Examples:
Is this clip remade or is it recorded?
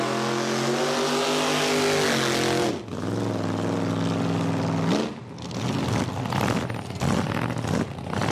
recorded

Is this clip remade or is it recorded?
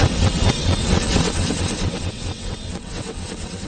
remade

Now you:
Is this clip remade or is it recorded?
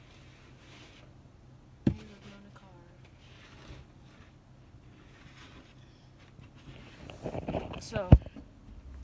recorded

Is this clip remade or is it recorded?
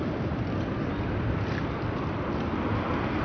recorded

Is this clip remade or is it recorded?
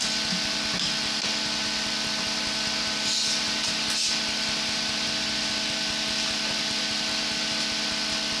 recorded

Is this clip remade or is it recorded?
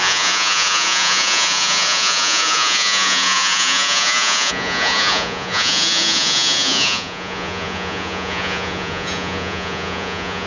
remade